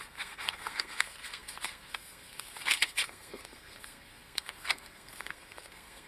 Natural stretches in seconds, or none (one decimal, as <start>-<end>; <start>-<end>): none